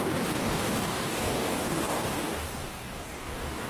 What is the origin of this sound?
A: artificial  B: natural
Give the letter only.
A